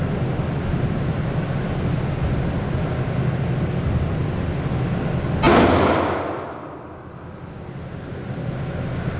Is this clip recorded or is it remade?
recorded